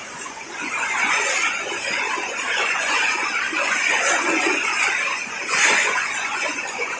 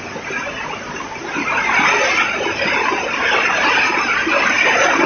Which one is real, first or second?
second